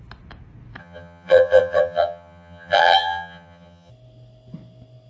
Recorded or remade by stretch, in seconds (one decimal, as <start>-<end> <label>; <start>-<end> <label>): 0.0-0.8 recorded; 0.8-3.9 remade; 3.9-5.1 recorded